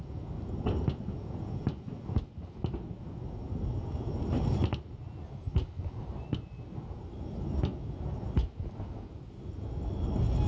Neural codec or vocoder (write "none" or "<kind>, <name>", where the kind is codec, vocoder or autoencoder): none